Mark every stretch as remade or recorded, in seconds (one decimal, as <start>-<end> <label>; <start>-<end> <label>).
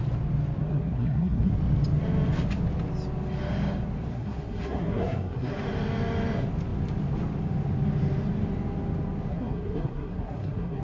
0.0-0.6 recorded; 0.6-1.5 remade; 1.5-4.1 recorded; 4.1-5.5 remade; 5.5-9.3 recorded; 9.3-10.8 remade